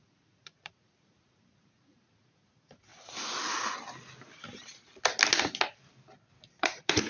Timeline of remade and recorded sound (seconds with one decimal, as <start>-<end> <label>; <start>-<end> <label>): 0.0-2.9 remade; 2.9-6.5 recorded; 6.5-7.1 remade